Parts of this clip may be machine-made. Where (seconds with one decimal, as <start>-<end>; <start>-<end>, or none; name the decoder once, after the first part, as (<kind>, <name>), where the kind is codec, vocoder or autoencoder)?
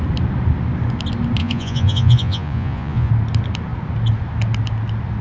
1.4-3.1 (vocoder, Vocos)